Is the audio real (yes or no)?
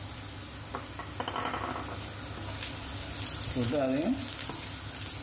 yes